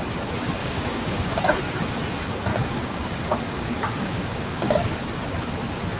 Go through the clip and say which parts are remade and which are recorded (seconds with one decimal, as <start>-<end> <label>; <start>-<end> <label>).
0.0-0.6 recorded; 0.6-1.4 remade; 1.4-2.5 recorded; 2.5-5.1 remade; 5.1-6.0 recorded